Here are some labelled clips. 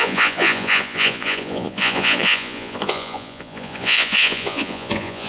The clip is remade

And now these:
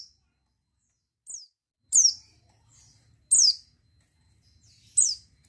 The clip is recorded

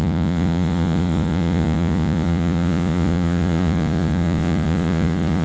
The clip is remade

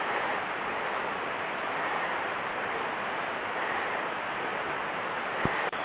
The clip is remade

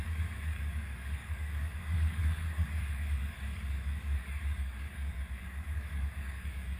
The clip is remade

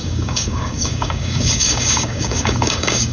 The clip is remade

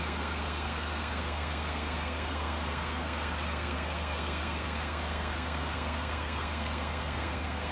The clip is remade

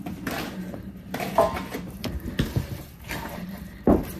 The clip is remade